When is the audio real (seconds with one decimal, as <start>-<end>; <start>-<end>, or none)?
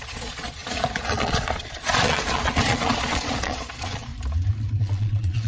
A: 4.1-4.8